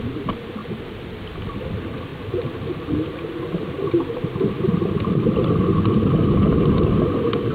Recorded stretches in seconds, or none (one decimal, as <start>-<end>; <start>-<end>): 0.0-0.6; 1.2-7.5